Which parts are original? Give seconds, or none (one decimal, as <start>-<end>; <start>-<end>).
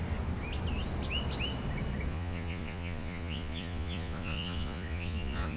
0.0-2.1